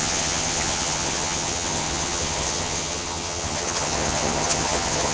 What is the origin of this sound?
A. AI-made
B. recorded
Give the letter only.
A